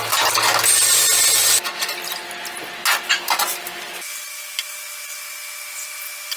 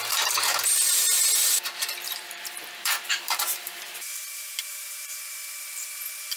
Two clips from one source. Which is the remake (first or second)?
second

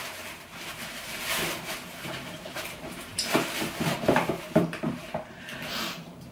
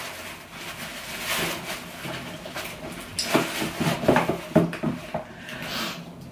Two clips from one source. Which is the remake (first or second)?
first